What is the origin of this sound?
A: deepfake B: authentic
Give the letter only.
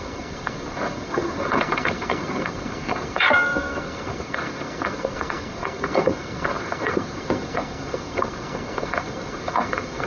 A